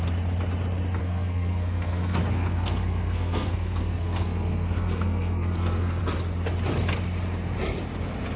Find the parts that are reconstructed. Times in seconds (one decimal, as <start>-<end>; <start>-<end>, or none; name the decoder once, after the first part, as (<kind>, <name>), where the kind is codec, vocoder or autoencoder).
1.0-6.0 (codec, SNAC)